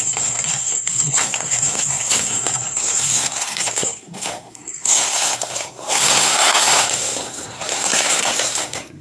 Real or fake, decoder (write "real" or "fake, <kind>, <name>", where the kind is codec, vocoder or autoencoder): fake, codec, SNAC